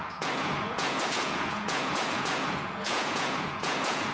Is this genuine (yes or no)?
no